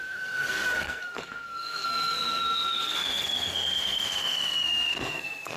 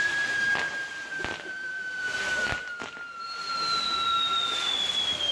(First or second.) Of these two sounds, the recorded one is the second